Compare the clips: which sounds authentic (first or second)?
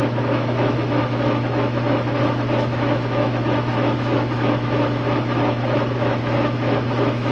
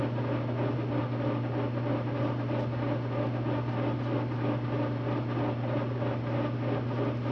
second